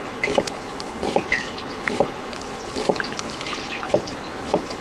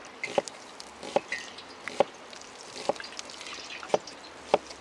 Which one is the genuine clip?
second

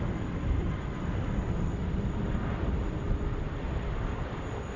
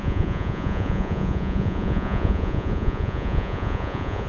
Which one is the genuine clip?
first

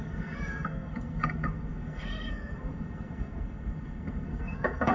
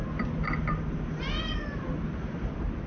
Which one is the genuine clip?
second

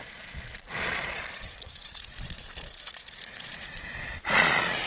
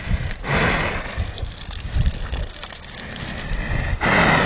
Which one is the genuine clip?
second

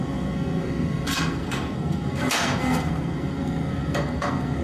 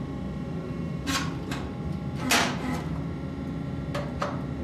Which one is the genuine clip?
second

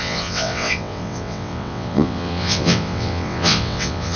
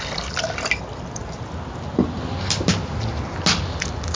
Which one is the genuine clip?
second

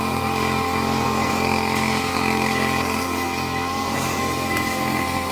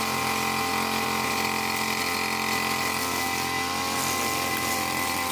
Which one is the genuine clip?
second